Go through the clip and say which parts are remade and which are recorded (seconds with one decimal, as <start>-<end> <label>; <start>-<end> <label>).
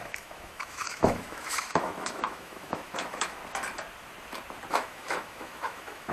0.0-3.4 remade; 3.4-4.7 recorded; 4.7-6.1 remade